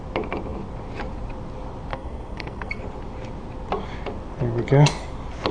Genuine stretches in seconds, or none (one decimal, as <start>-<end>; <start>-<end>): 0.0-1.9; 2.8-5.5